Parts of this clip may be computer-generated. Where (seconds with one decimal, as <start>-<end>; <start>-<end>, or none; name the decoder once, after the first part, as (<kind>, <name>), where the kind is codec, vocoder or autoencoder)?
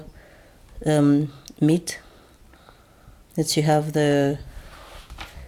none